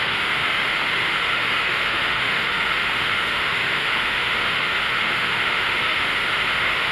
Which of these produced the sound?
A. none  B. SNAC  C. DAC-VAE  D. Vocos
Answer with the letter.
C